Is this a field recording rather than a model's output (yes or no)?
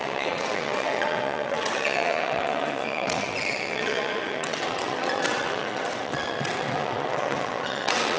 no